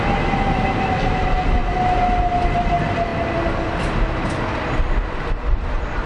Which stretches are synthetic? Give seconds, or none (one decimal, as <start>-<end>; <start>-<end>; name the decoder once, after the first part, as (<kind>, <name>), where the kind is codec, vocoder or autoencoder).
none